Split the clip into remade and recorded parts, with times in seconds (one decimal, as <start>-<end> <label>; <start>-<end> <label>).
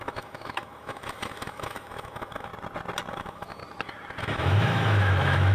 0.0-2.5 remade; 2.5-3.1 recorded; 3.1-3.6 remade; 3.6-4.2 recorded; 4.2-5.5 remade